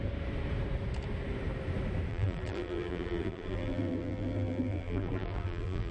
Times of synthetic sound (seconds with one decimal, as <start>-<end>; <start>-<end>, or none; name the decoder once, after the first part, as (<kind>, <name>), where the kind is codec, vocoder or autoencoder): 2.1-5.9 (vocoder, BigVGAN v2)